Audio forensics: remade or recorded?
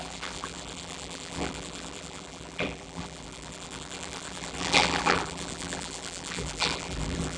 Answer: remade